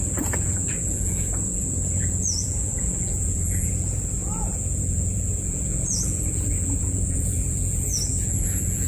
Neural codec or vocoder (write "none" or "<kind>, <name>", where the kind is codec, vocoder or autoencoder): vocoder, Vocos